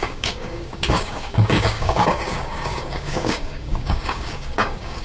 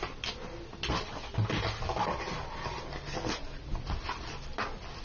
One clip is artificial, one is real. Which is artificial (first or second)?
first